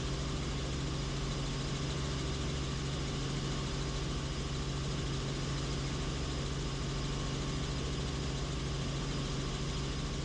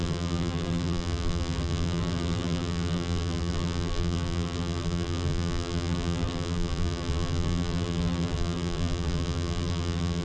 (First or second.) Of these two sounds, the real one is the first